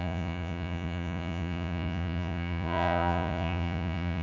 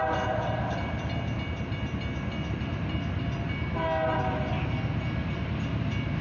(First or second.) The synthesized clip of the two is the first